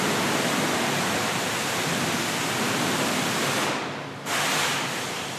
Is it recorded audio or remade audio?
remade